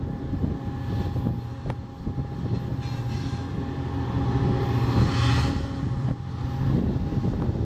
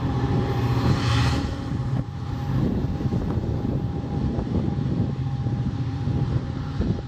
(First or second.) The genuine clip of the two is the first